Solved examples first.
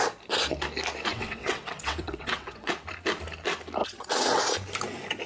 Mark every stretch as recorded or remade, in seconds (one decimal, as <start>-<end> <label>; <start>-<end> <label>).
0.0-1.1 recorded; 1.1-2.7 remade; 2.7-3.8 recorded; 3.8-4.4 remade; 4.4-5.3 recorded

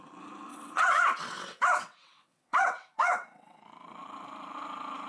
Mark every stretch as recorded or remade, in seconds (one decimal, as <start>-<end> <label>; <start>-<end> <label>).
0.0-0.5 recorded; 0.5-3.6 remade; 3.6-5.1 recorded

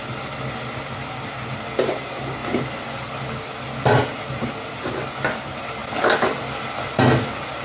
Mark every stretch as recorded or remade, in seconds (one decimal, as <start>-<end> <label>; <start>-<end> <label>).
0.0-7.6 recorded

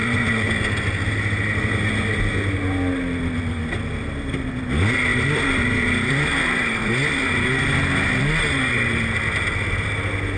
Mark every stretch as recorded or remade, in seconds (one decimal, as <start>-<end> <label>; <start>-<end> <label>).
0.0-0.7 remade; 0.7-5.1 recorded; 5.1-8.4 remade; 8.4-10.4 recorded